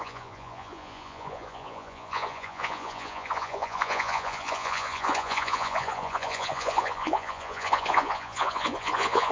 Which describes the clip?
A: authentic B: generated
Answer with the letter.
B